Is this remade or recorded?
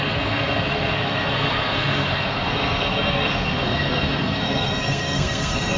remade